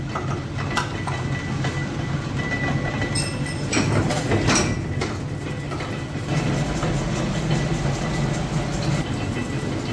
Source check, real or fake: real